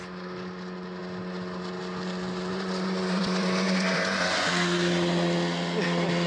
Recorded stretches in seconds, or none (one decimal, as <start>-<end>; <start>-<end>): 0.0-2.5; 4.5-6.3